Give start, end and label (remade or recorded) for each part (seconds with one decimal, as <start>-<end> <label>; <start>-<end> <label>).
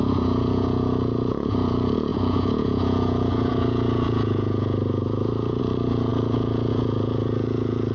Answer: 0.0-7.9 remade